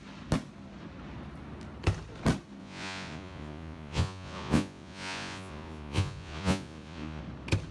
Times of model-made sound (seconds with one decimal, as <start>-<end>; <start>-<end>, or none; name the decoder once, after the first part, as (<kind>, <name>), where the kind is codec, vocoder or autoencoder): 2.6-7.2 (vocoder, Vocos)